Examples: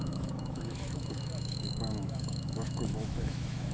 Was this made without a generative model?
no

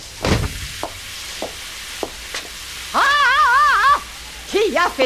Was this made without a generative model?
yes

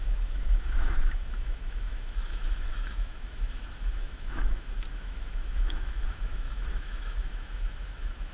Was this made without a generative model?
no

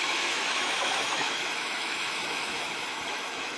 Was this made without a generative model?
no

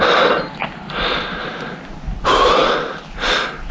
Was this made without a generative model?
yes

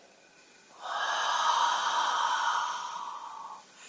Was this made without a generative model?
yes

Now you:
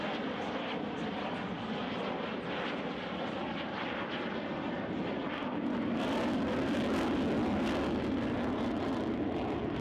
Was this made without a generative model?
yes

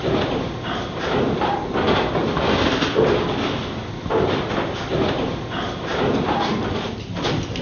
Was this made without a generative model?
yes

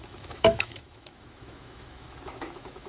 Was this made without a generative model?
no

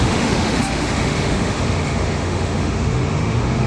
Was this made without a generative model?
no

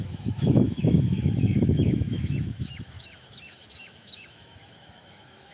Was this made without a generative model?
no